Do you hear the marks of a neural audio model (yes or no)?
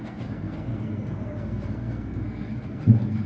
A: yes